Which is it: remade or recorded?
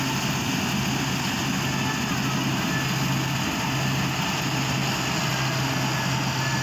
recorded